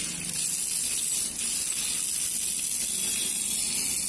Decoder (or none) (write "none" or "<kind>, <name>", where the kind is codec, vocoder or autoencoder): none